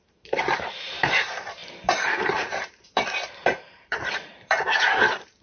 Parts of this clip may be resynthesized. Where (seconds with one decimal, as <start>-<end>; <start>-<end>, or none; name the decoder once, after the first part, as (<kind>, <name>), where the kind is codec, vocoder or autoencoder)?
0.0-5.4 (vocoder, BigVGAN v2)